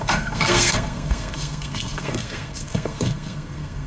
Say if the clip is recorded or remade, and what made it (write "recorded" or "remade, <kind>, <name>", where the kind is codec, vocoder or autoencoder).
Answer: remade, codec, SNAC